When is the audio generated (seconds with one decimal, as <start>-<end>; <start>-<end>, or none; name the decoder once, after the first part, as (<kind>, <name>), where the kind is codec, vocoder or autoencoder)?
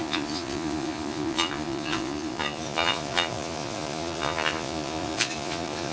0.0-5.9 (vocoder, Vocos)